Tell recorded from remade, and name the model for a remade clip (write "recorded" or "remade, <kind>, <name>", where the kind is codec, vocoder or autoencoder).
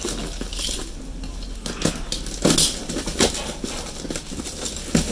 recorded